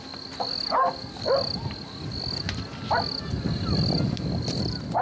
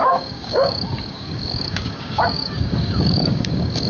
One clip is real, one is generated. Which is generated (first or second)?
second